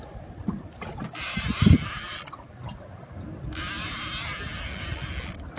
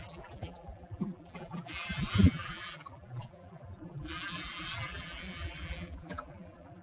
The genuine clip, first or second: first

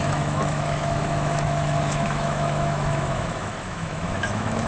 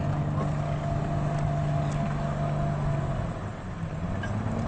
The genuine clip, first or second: second